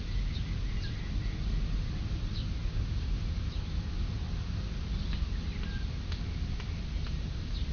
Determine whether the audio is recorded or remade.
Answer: recorded